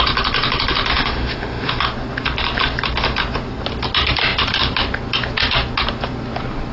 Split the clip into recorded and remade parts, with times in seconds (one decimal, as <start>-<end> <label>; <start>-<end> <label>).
0.0-0.9 recorded; 0.9-1.8 remade; 1.8-6.7 recorded